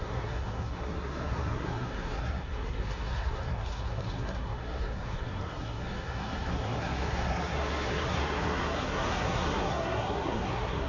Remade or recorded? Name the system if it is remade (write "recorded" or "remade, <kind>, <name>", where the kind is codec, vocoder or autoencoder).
remade, codec, SNAC